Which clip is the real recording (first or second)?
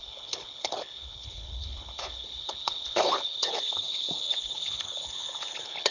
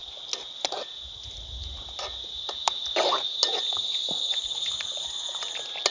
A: second